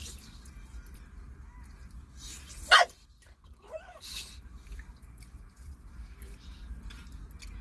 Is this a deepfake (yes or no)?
no